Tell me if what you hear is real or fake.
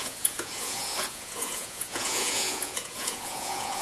fake